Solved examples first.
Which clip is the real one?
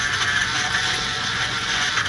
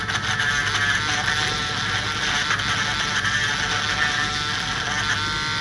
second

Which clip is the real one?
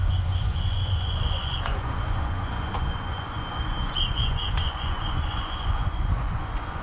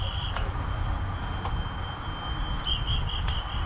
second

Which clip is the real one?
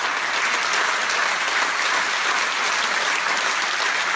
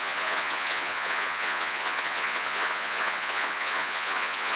first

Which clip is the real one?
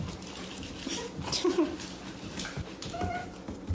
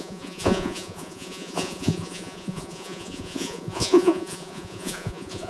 first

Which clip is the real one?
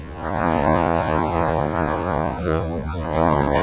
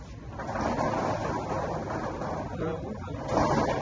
second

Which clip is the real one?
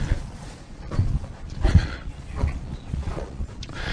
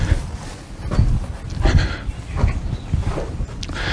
second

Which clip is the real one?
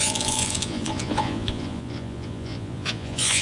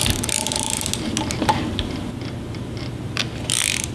second